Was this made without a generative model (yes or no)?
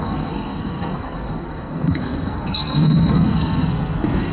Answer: no